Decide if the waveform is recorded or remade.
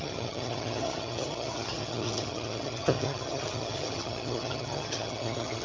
remade